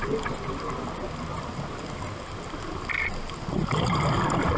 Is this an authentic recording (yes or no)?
yes